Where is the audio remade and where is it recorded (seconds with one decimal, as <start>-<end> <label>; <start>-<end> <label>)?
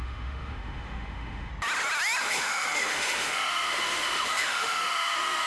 0.0-1.5 remade; 1.5-2.2 recorded; 2.2-5.5 remade